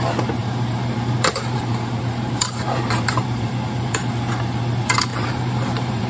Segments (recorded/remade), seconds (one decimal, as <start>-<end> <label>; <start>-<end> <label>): 0.0-0.4 recorded; 0.4-4.1 remade; 4.1-5.1 recorded; 5.1-6.1 remade